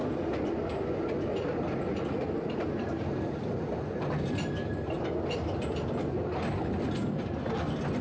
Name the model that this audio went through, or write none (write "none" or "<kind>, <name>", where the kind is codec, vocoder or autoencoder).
none